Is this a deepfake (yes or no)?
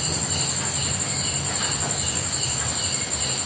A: no